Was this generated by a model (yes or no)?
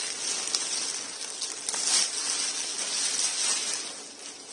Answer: no